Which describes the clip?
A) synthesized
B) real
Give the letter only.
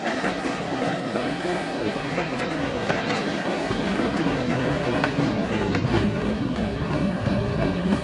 A